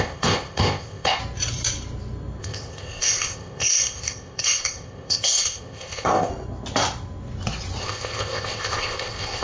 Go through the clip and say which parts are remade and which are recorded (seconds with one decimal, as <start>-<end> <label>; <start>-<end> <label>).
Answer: 0.0-1.2 remade; 1.2-2.4 recorded; 2.4-6.3 remade; 6.3-7.8 recorded; 7.8-9.4 remade